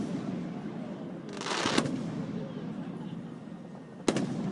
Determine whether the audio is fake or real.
real